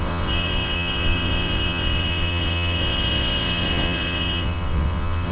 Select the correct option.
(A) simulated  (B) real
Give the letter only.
A